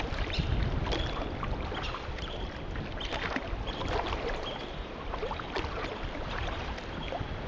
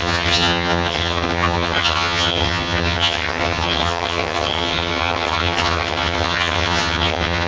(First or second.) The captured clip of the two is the first